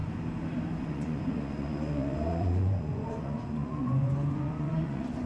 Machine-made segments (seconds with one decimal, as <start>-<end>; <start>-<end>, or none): 0.8-5.3